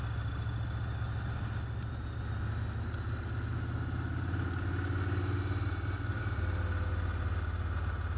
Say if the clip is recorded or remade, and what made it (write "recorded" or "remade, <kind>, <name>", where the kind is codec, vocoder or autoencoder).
recorded